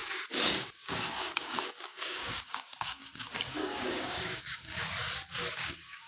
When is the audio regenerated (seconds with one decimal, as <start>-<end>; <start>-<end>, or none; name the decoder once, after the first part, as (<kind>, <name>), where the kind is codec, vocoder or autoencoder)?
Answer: 0.0-4.8 (codec, DAC); 5.5-6.1